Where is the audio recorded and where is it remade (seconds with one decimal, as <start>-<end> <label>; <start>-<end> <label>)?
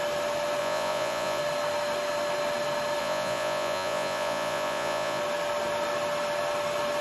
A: 0.0-0.6 recorded; 0.6-1.4 remade; 1.4-3.0 recorded; 3.0-5.2 remade; 5.2-7.0 recorded